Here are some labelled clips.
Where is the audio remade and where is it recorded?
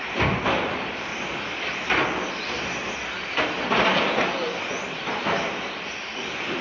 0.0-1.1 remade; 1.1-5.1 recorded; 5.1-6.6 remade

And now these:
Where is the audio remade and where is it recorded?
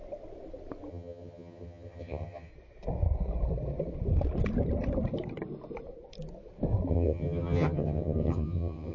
0.0-0.9 recorded; 0.9-2.5 remade; 2.5-6.9 recorded; 6.9-8.9 remade